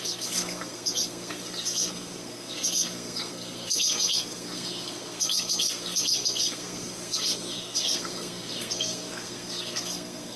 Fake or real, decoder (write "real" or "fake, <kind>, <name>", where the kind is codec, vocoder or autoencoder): fake, codec, SNAC